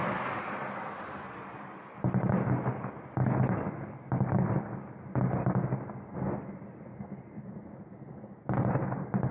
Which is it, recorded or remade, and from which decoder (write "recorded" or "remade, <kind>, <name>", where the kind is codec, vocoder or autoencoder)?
recorded